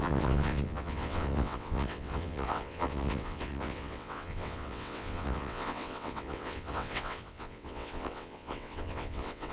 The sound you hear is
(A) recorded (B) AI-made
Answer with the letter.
B